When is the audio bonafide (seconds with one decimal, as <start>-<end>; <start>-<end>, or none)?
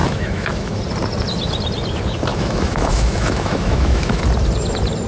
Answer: 0.8-2.3; 4.2-5.1